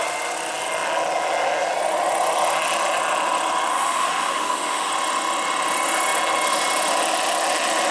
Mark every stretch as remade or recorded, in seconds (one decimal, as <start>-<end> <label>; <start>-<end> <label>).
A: 0.0-3.7 recorded; 3.7-4.9 remade; 4.9-7.9 recorded